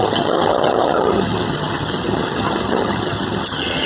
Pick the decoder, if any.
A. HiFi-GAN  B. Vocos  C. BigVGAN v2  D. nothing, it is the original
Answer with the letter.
A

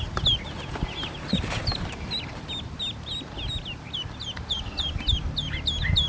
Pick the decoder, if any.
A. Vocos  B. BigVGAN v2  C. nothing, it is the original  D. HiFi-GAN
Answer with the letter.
C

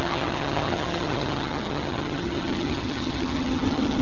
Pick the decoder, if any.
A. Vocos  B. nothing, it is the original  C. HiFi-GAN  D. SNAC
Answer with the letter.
C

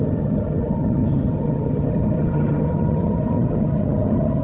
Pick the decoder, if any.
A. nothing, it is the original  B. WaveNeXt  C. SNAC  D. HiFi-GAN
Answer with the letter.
D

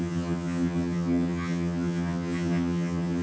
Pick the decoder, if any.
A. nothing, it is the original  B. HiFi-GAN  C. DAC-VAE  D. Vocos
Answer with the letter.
B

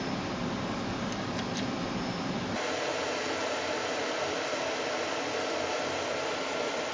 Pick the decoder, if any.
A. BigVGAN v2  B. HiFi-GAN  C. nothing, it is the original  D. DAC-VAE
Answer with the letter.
C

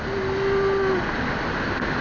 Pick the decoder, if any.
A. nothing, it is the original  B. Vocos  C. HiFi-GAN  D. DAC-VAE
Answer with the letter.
A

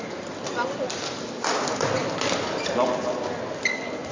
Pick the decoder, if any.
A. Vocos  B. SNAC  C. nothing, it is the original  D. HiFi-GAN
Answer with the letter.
C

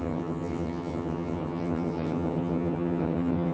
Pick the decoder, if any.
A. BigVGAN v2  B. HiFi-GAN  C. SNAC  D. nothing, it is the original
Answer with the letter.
B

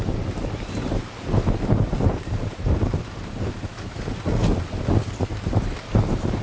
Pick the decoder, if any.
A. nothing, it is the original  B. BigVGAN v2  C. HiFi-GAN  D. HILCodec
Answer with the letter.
A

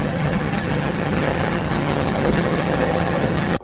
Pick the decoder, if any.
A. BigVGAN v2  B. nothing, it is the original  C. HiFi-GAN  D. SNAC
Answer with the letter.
C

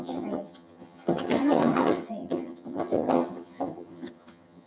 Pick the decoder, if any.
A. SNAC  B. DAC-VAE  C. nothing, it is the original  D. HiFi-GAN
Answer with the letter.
D